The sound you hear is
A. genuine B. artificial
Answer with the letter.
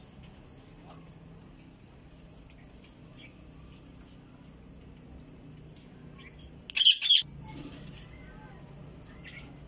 A